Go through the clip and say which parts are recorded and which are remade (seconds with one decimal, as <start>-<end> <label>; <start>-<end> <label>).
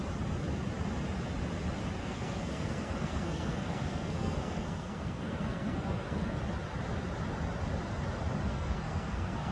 0.0-2.0 recorded; 2.0-6.4 remade; 6.4-8.5 recorded; 8.5-9.5 remade